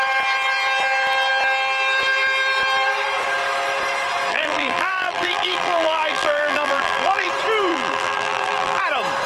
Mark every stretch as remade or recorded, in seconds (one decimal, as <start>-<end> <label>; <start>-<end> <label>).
0.0-4.3 recorded; 4.3-7.3 remade; 7.3-7.7 recorded; 7.7-8.8 remade; 8.8-9.3 recorded